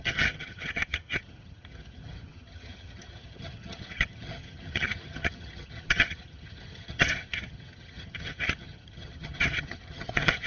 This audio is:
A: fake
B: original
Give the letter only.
A